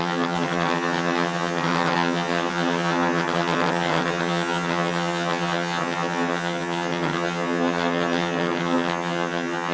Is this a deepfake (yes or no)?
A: yes